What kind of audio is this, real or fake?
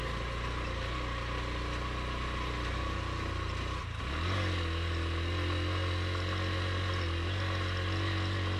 real